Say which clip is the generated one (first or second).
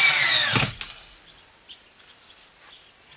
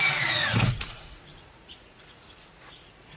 second